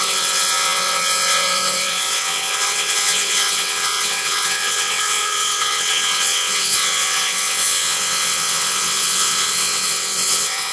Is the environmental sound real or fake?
fake